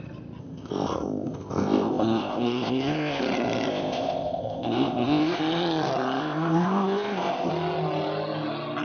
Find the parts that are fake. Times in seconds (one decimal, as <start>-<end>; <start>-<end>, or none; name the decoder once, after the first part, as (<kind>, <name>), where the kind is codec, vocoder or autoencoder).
0.4-3.2 (codec, ZipCodec); 3.7-5.4; 6.2-7.5